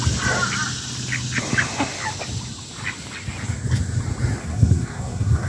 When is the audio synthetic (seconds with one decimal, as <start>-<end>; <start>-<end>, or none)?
4.4-5.5